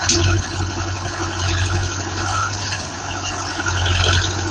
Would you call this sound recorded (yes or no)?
no